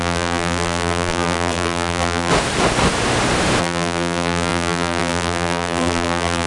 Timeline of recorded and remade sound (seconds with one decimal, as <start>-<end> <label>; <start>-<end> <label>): 0.0-2.3 remade; 2.3-3.6 recorded; 3.6-6.5 remade